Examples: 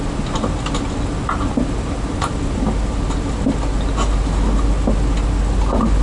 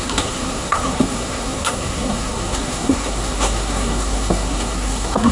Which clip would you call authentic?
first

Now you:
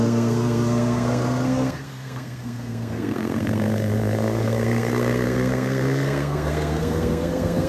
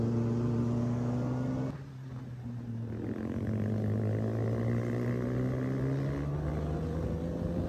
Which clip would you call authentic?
second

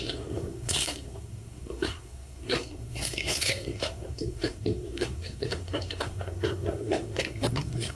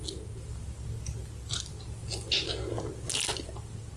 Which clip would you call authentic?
second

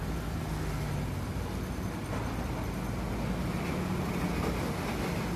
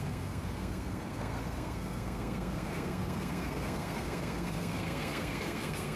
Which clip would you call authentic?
first